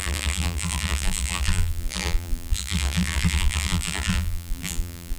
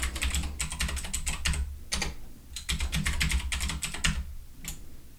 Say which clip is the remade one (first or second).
first